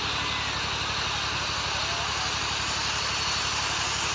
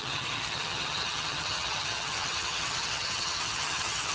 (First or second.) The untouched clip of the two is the first